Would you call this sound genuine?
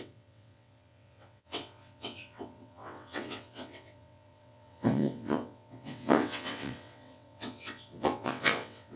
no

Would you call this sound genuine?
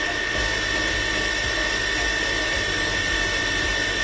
yes